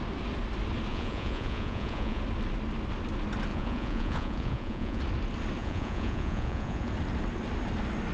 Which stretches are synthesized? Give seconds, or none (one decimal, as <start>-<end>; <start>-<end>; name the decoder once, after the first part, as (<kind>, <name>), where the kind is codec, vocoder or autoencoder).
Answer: 0.9-2.2 (vocoder, Vocos); 3.5-5.0; 5.6-6.9